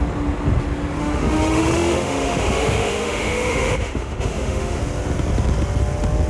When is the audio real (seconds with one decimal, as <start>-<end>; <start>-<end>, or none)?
0.0-1.0; 4.8-6.3